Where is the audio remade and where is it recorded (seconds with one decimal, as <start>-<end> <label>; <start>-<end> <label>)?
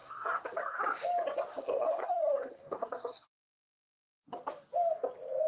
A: 0.0-0.8 remade; 0.8-1.5 recorded; 1.5-3.4 remade; 3.4-5.5 recorded